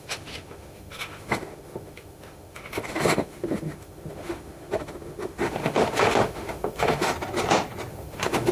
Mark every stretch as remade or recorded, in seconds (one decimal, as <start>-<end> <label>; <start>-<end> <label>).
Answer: 0.0-7.1 remade; 7.1-7.9 recorded; 7.9-8.5 remade